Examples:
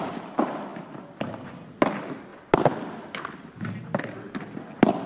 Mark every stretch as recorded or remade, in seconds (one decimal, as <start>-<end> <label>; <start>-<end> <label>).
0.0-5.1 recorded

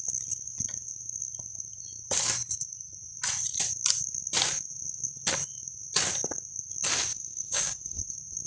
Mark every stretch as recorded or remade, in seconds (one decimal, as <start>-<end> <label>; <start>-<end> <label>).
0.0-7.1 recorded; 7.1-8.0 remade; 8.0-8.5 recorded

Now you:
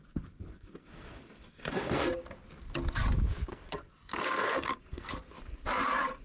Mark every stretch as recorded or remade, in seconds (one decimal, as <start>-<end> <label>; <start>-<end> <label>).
0.0-0.5 recorded; 0.5-2.1 remade; 2.1-3.5 recorded; 3.5-5.1 remade; 5.1-6.2 recorded